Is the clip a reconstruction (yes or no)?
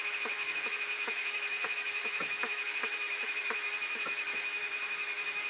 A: yes